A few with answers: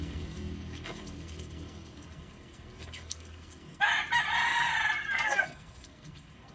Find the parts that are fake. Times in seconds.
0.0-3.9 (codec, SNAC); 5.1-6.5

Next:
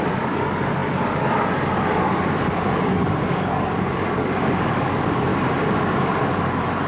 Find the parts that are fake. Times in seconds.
0.0-5.3 (codec, DAC); 6.1-6.9

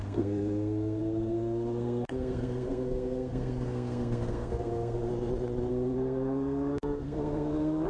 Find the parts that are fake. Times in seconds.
0.0-5.1 (codec, SNAC); 5.7-7.9

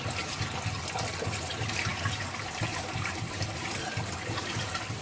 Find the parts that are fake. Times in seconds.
1.9-5.0 (vocoder, BigVGAN v2)

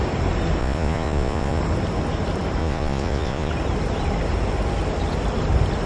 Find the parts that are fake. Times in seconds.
0.6-1.6 (vocoder, Vocos); 2.6-3.5